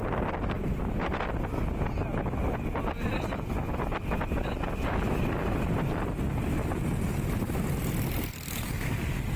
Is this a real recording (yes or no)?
yes